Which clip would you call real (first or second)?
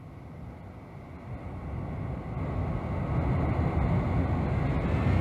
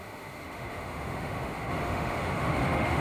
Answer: first